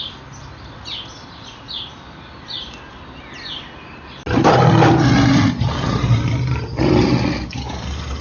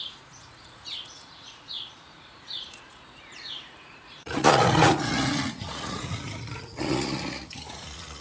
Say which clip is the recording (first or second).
first